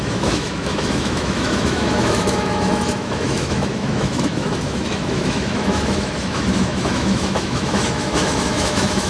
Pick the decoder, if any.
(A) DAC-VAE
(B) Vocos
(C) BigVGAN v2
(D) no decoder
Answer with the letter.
A